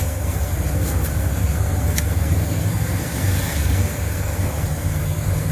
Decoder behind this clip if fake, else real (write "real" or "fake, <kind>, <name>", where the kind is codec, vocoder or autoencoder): fake, codec, SNAC